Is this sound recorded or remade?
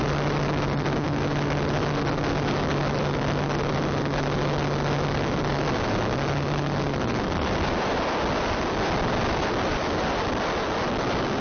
recorded